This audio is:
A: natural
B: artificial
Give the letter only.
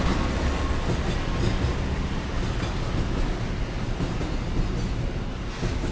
A